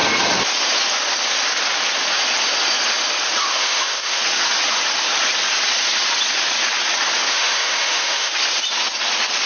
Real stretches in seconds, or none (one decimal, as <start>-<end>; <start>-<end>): 0.0-3.5; 4.2-7.3; 8.3-9.5